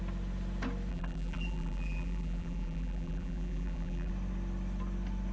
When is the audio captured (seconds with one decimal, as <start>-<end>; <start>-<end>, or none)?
0.0-0.9; 4.1-5.3